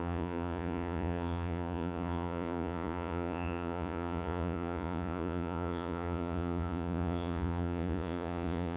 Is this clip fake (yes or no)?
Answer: yes